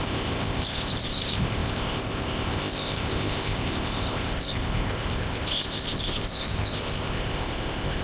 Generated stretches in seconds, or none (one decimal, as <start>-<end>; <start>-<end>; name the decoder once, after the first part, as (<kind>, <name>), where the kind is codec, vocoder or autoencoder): 0.0-8.0 (codec, ZipCodec)